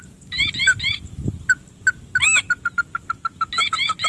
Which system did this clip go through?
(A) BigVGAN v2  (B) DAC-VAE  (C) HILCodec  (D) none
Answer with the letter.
D